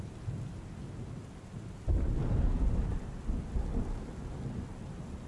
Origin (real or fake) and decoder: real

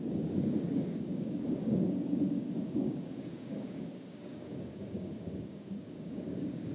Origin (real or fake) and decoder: fake, codec, DAC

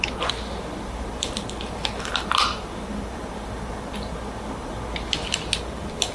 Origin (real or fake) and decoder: fake, vocoder, BigVGAN v2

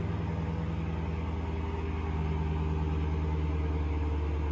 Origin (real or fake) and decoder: real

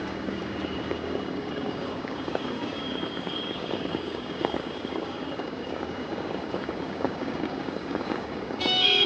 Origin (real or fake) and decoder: fake, codec, DAC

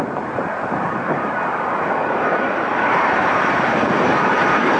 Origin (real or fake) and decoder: fake, vocoder, BigVGAN v2